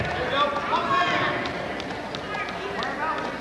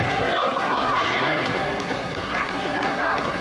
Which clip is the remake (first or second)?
second